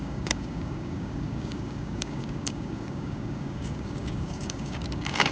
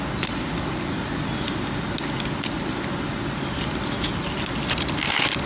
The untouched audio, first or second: second